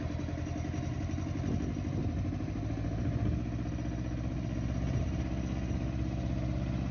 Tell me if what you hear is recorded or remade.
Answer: recorded